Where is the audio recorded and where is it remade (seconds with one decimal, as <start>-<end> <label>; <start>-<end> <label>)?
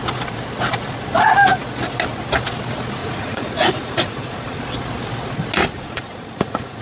0.0-3.0 recorded; 3.0-4.6 remade; 4.6-5.6 recorded; 5.6-6.8 remade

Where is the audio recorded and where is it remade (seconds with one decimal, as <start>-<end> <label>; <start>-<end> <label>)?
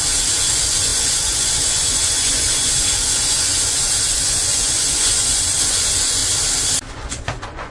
0.0-6.2 remade; 6.2-6.9 recorded; 6.9-7.7 remade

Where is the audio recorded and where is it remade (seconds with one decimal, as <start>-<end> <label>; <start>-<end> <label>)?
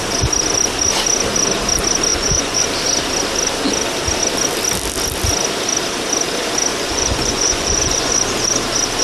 0.0-2.1 recorded; 2.1-2.6 remade; 2.6-6.7 recorded; 6.7-8.1 remade; 8.1-9.0 recorded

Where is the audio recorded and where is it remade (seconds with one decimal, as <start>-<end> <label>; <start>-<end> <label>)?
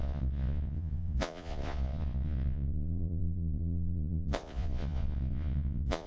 0.0-6.1 remade